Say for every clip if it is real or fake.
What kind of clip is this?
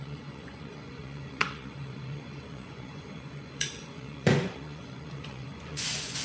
fake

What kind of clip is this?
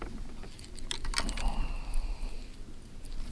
real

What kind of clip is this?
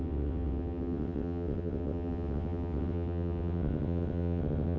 fake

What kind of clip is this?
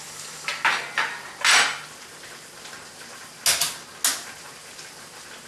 real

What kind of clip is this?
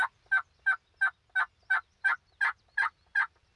real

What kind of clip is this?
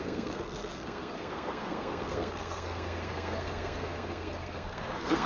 fake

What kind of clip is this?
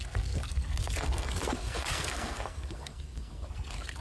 fake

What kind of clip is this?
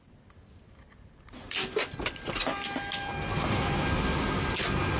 real